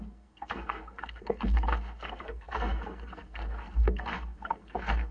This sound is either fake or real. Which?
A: fake